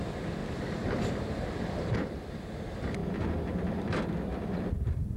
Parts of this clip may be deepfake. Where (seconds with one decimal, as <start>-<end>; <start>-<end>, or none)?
0.4-1.1